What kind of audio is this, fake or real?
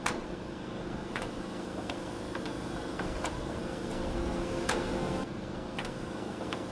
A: fake